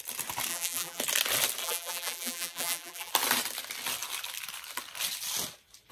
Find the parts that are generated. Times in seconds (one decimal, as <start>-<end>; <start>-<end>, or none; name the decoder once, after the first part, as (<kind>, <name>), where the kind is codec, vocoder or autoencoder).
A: 0.5-1.0 (vocoder, BigVGAN v2); 1.6-3.1